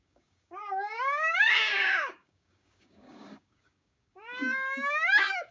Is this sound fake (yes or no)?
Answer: yes